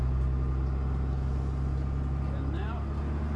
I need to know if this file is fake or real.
real